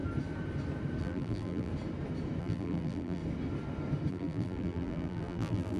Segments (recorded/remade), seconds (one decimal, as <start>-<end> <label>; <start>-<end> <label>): 0.0-1.0 recorded; 1.0-1.7 remade; 1.7-2.4 recorded; 2.4-3.2 remade; 3.2-4.1 recorded; 4.1-5.8 remade